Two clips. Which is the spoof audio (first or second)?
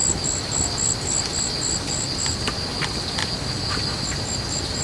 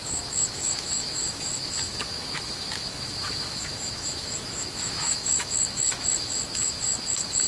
second